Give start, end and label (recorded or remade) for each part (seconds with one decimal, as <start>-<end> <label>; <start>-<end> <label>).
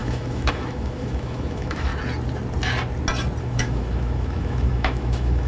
0.0-1.9 remade; 1.9-3.4 recorded; 3.4-5.5 remade